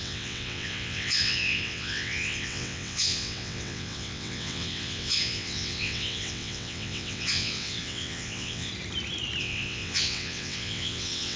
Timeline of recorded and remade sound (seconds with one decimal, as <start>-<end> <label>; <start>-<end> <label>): 0.0-8.7 remade; 8.7-9.4 recorded; 9.4-11.4 remade